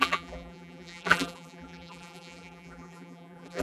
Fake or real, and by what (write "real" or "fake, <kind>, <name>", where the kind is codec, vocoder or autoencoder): fake, vocoder, BigVGAN v2